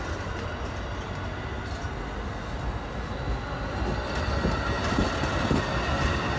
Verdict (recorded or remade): recorded